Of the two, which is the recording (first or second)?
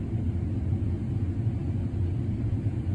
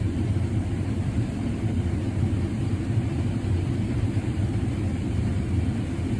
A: first